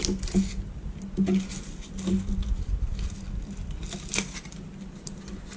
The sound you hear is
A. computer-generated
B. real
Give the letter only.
B